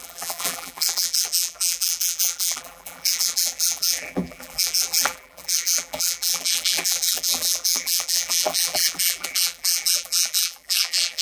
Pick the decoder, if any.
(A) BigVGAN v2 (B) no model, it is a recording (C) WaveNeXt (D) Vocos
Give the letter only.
A